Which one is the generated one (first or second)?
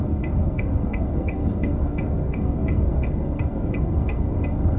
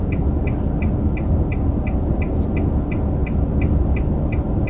first